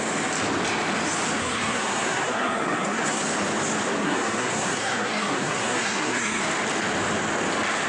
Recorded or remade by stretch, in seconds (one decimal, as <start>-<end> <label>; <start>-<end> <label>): 0.0-1.4 recorded; 1.4-3.2 remade; 3.2-4.0 recorded; 4.0-6.4 remade; 6.4-7.9 recorded